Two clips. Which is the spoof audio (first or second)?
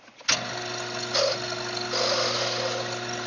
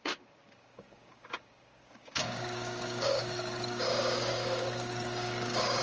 second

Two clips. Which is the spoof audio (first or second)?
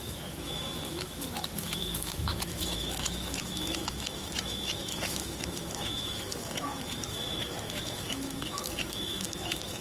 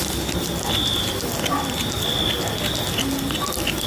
first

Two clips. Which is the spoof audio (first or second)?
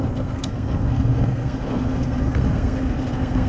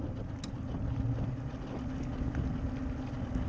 first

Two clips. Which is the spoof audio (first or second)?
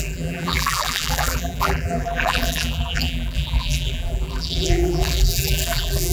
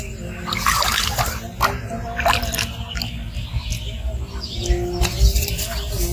first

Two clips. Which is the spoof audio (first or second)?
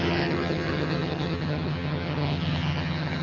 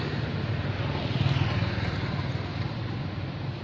first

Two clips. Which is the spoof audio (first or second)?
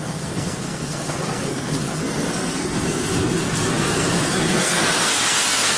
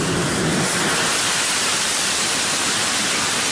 first